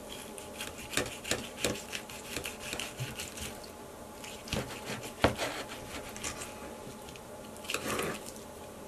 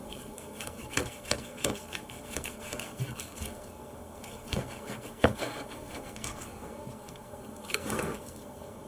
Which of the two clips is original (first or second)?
first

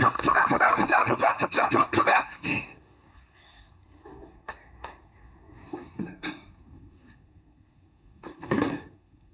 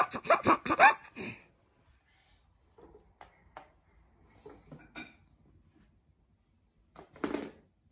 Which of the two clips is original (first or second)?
second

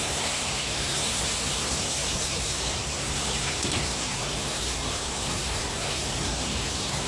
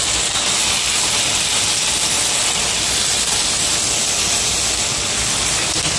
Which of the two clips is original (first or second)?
second